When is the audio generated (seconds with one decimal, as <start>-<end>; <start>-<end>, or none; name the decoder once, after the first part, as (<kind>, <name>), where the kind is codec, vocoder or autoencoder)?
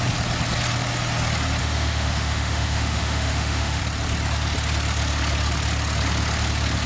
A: 1.6-3.8 (autoencoder, DAC-VAE)